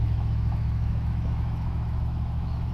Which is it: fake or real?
fake